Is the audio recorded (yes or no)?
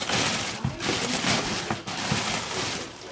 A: yes